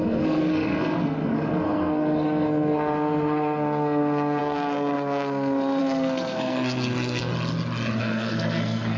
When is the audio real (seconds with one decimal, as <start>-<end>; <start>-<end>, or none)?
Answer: 7.3-8.0